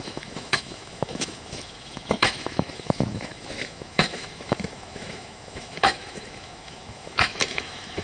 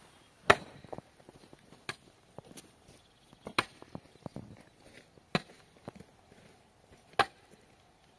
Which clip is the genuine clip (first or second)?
second